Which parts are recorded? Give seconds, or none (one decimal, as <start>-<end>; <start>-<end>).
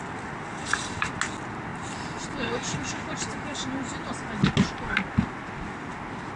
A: 0.0-0.5; 1.1-1.7; 4.1-6.4